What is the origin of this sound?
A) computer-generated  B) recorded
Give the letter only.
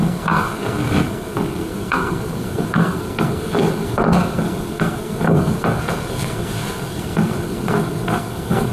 A